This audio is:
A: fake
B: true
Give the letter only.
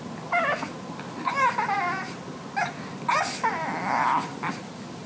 B